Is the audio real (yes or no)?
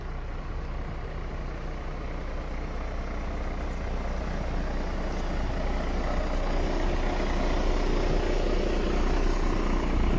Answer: yes